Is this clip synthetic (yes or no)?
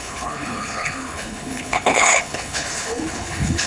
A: yes